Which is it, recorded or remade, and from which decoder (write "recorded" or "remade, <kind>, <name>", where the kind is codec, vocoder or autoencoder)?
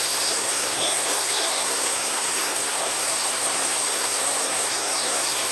remade, codec, SNAC